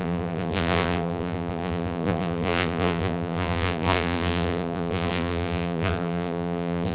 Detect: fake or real fake